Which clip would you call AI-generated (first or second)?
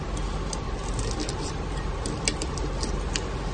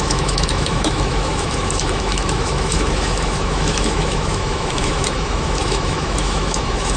second